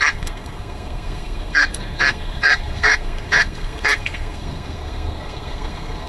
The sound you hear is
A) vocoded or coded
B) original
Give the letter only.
A